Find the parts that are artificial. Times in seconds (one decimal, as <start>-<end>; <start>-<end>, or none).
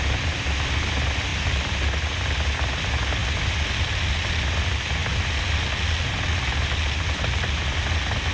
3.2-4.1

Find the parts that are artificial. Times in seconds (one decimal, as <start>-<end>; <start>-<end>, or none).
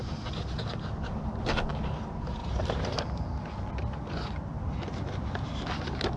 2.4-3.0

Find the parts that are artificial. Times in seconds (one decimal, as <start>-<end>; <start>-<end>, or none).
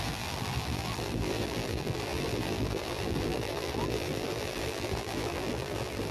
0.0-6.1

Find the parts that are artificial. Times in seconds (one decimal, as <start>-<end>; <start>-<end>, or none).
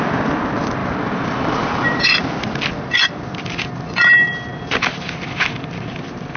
0.8-2.3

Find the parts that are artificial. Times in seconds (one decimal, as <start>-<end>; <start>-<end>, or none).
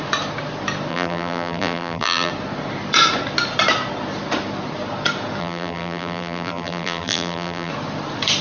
0.9-2.3; 5.4-7.7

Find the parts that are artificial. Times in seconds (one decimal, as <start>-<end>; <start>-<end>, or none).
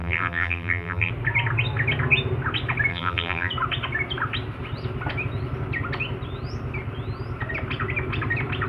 0.0-1.1; 2.9-3.5